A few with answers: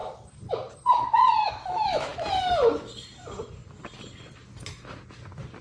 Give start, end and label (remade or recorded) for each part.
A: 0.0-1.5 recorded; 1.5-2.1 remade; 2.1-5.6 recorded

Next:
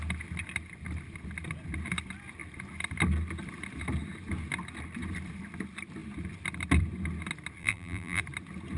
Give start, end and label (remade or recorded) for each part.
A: 0.0-7.6 recorded; 7.6-8.2 remade; 8.2-8.8 recorded